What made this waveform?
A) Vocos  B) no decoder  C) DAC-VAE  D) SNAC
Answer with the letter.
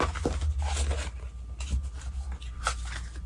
B